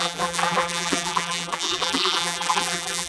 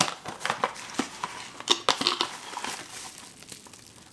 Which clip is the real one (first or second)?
second